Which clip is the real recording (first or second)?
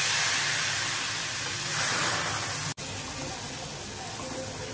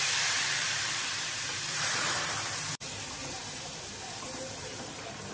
first